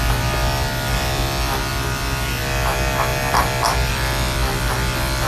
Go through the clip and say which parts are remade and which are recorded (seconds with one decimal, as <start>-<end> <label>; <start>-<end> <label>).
0.0-5.3 recorded